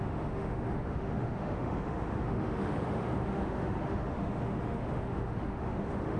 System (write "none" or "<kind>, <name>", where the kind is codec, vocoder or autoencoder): autoencoder, DAC-VAE